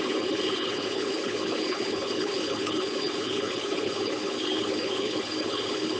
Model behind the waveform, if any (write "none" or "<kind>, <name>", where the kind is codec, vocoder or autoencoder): codec, HILCodec